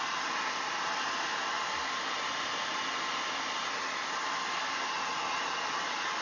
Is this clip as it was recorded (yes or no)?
yes